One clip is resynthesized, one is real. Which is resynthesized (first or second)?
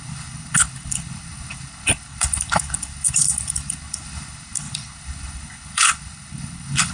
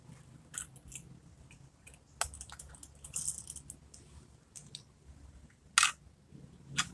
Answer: first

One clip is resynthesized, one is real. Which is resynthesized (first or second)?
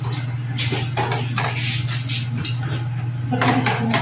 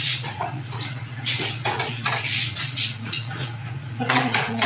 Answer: second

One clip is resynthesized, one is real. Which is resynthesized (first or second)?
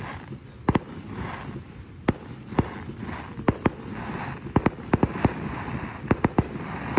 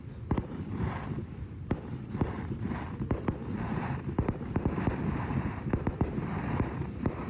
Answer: second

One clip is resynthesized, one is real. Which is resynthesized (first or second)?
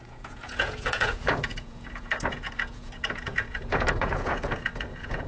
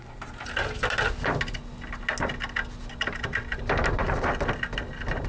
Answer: first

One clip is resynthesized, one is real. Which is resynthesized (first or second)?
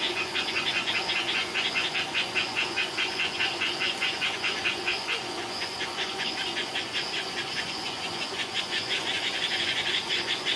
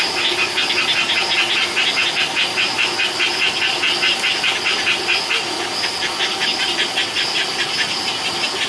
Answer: first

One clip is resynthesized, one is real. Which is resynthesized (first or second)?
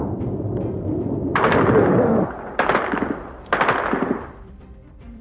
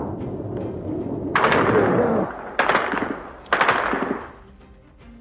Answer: first